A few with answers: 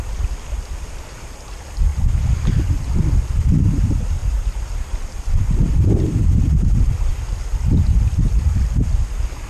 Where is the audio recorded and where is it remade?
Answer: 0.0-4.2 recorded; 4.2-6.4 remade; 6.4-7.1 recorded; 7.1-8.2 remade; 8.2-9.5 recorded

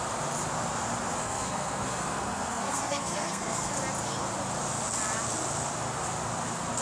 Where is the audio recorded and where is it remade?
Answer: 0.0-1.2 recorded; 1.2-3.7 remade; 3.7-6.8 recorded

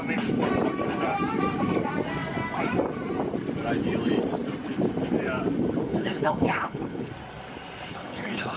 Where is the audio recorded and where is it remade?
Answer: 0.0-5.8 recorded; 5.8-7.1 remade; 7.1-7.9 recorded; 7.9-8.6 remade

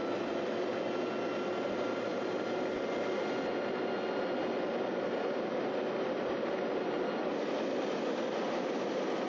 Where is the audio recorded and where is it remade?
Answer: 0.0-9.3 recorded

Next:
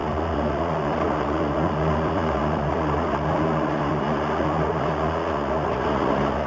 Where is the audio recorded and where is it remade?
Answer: 0.0-6.5 remade

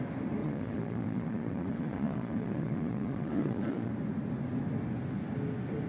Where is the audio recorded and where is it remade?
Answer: 0.0-0.4 recorded; 0.4-3.9 remade; 3.9-5.9 recorded

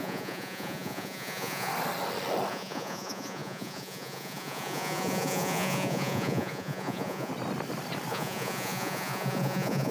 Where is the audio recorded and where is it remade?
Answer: 0.0-1.7 remade; 1.7-2.5 recorded; 2.5-7.3 remade; 7.3-8.1 recorded; 8.1-9.9 remade

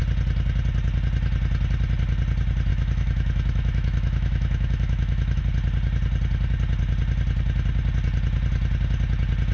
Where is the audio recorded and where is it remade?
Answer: 0.0-2.7 recorded; 2.7-5.4 remade; 5.4-9.5 recorded